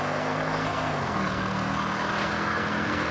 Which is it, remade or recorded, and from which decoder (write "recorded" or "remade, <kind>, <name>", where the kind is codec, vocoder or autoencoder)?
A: remade, codec, SNAC